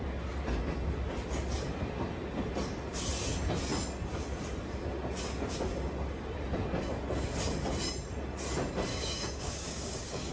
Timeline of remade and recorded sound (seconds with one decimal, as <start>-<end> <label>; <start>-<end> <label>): 0.0-8.9 recorded; 8.9-10.3 remade